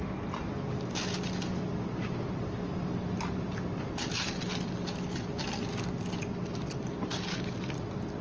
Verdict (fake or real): real